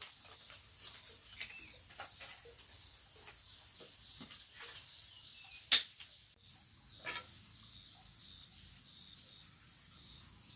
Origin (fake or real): real